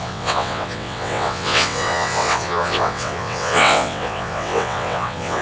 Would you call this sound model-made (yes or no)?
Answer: yes